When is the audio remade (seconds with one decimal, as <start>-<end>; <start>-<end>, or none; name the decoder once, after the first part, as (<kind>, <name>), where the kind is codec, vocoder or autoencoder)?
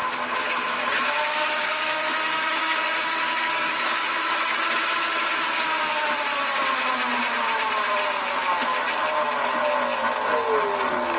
0.0-4.7 (codec, DAC)